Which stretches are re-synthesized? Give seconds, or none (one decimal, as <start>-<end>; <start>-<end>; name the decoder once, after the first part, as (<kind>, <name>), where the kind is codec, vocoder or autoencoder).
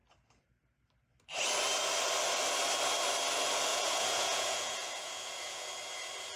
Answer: 3.7-5.7 (vocoder, Vocos)